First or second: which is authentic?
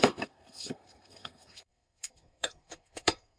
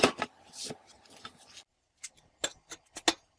second